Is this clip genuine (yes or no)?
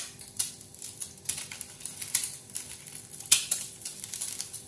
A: no